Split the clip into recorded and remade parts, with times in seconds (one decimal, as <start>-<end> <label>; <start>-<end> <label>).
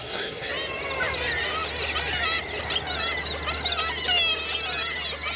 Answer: 0.0-0.5 remade; 0.5-5.4 recorded